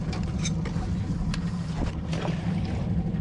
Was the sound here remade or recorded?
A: recorded